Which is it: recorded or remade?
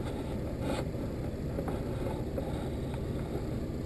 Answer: recorded